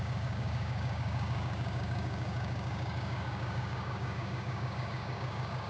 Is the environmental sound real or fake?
fake